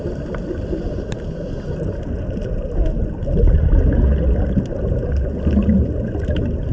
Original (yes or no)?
yes